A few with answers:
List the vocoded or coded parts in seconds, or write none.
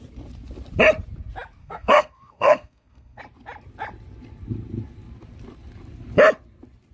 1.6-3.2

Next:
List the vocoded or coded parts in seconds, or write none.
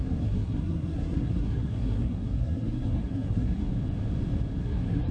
0.0-3.7; 4.6-5.1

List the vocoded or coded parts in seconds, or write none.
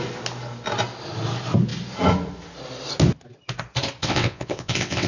4.0-5.1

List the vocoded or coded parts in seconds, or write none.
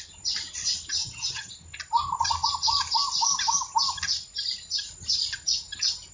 1.0-1.5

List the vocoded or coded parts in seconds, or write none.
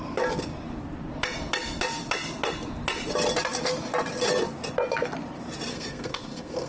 5.7-6.7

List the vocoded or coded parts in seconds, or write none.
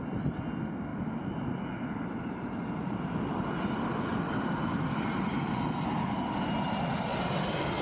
0.9-3.0; 7.1-7.8